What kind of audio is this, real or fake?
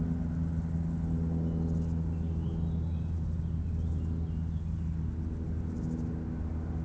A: real